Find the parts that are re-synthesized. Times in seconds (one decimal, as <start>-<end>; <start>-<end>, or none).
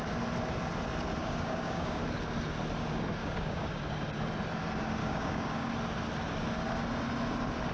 1.2-2.0; 3.2-3.8; 5.0-5.7